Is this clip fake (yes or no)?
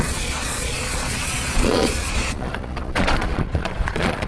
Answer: yes